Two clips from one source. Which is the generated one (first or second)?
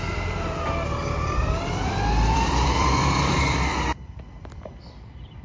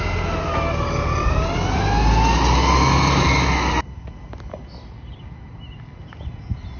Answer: first